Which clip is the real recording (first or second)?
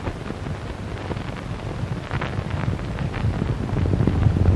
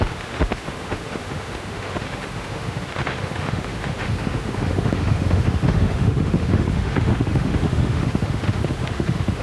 first